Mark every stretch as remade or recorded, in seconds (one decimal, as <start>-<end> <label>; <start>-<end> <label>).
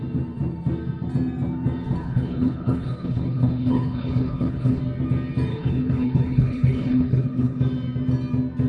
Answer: 0.0-2.0 recorded; 2.0-4.8 remade; 4.8-5.5 recorded; 5.5-7.6 remade; 7.6-8.7 recorded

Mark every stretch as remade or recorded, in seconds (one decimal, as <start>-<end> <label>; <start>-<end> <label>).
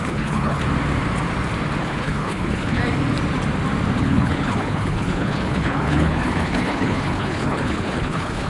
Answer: 0.0-0.6 remade; 0.6-1.8 recorded; 1.8-2.8 remade; 2.8-4.0 recorded; 4.0-8.5 remade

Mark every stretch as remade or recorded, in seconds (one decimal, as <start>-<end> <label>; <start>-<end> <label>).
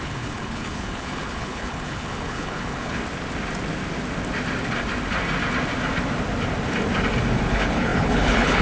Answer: 0.0-3.0 remade; 3.0-7.5 recorded; 7.5-8.6 remade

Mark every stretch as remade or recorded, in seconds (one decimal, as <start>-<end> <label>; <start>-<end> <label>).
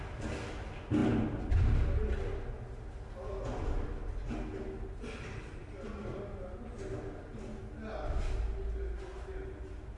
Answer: 0.0-10.0 recorded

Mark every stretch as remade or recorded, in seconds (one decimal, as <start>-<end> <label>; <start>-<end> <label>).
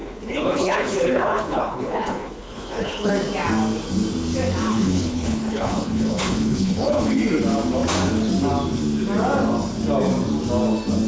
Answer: 0.0-3.1 remade; 3.1-4.7 recorded; 4.7-7.2 remade; 7.2-11.1 recorded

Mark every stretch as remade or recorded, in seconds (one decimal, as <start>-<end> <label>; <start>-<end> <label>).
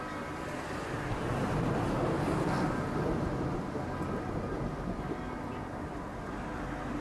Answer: 0.0-7.0 recorded